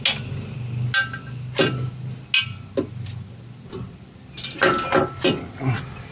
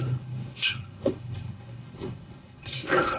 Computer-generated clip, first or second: second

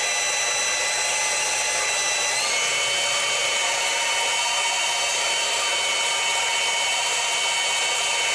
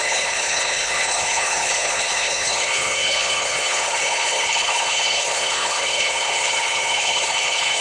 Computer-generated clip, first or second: second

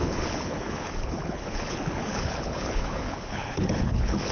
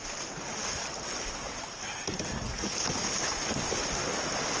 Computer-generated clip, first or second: first